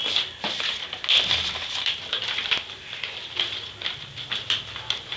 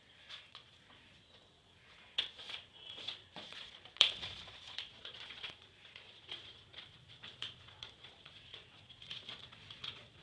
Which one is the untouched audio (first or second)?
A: first